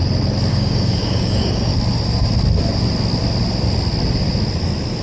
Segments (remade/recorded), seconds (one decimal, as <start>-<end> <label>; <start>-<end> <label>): 0.0-0.5 recorded; 0.5-1.7 remade; 1.7-5.0 recorded